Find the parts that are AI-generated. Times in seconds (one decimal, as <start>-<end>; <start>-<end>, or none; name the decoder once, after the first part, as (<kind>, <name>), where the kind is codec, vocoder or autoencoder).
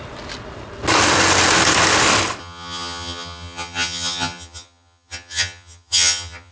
2.4-6.5 (vocoder, HiFi-GAN)